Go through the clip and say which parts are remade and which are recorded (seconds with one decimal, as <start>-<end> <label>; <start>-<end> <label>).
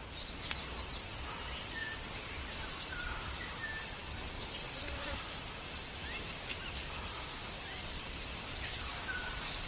0.0-9.7 recorded